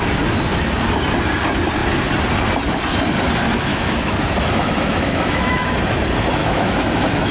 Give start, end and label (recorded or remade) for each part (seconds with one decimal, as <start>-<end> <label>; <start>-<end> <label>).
0.0-3.7 recorded; 3.7-5.8 remade; 5.8-6.4 recorded; 6.4-7.3 remade